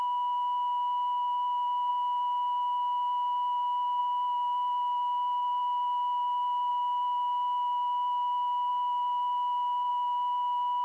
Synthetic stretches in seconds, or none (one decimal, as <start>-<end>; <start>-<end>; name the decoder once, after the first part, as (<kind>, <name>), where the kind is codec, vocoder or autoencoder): none